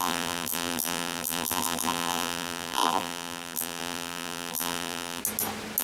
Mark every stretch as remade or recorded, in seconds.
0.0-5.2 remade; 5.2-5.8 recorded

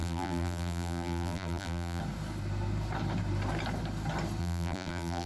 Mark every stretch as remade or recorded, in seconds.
0.0-2.0 remade; 2.0-4.4 recorded; 4.4-5.3 remade

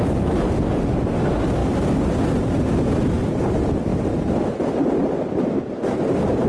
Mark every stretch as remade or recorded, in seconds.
0.0-6.5 recorded

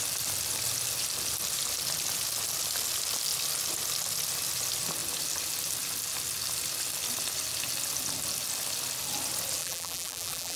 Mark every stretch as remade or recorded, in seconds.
0.0-9.6 recorded; 9.6-10.6 remade

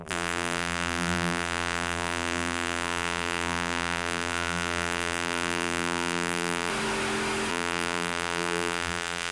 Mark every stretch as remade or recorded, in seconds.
0.0-6.7 remade; 6.7-7.5 recorded; 7.5-9.3 remade

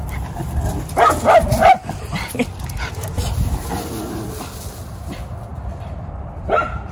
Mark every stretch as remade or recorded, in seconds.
0.0-5.5 recorded; 5.5-6.9 remade

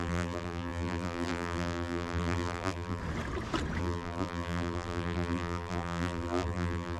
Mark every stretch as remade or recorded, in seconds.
0.0-3.0 remade; 3.0-3.8 recorded; 3.8-7.0 remade